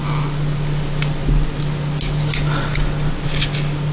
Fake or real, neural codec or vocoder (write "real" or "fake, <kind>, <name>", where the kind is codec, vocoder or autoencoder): real